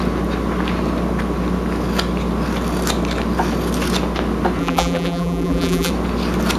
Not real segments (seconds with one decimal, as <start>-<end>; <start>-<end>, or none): 4.6-5.9